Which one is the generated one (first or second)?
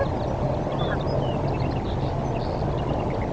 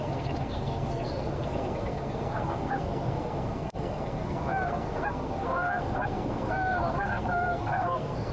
second